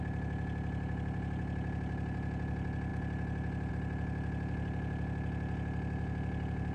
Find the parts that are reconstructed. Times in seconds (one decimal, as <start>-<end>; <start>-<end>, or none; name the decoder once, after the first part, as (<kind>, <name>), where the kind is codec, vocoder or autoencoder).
none